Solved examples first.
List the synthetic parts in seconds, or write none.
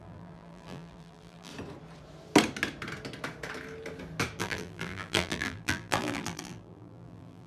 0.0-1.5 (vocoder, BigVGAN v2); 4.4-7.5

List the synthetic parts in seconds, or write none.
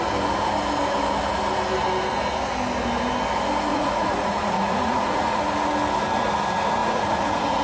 3.7-5.4 (vocoder, Vocos); 6.8-7.6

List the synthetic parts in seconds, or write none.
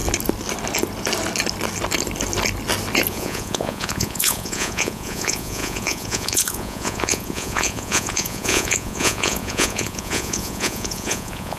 3.1-11.6 (vocoder, Vocos)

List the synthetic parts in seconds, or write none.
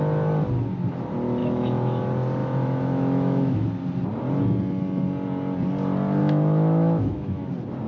1.4-2.0 (autoencoder, DAC-VAE); 2.4-3.7; 6.2-7.5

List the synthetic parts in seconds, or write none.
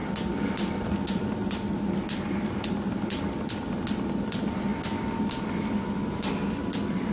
none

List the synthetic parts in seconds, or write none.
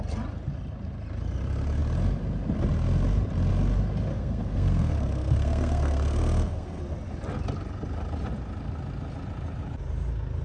4.1-6.8 (codec, SNAC)